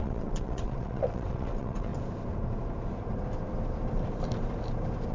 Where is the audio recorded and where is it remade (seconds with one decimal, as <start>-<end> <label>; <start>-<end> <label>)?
0.0-1.9 remade; 1.9-5.1 recorded

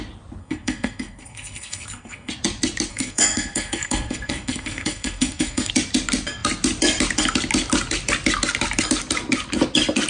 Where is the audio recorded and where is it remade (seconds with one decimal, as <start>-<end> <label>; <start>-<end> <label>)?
0.0-0.4 recorded; 0.4-2.3 remade; 2.3-2.9 recorded; 2.9-5.7 remade; 5.7-10.1 recorded

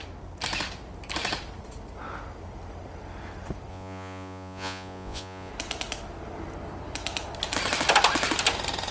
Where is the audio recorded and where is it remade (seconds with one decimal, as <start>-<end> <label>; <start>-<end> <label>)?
0.0-3.7 recorded; 3.7-5.5 remade; 5.5-8.9 recorded